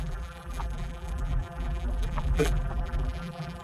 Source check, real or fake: fake